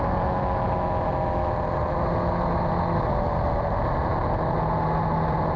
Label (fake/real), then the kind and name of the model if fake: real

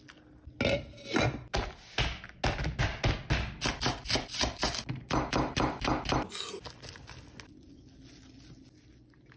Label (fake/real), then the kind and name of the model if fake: real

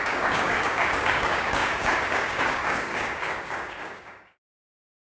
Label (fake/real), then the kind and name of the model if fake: fake, codec, DAC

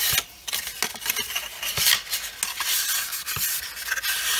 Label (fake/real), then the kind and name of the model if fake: real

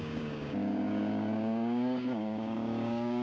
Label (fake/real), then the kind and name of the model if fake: fake, codec, DAC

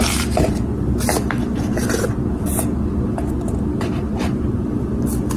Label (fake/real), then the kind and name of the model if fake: real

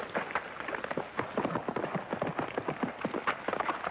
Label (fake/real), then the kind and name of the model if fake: real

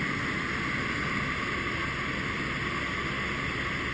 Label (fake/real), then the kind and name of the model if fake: real